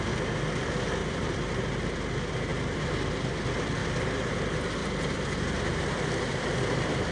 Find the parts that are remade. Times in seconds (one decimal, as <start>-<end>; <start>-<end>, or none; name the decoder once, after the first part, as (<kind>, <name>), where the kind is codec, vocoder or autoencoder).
1.0-1.6 (vocoder, BigVGAN v2); 2.5-3.1; 4.8-7.1